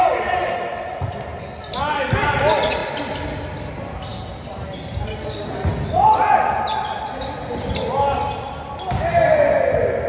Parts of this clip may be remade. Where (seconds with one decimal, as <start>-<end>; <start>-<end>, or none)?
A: none